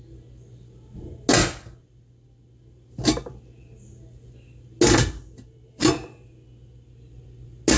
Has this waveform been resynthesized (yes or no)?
no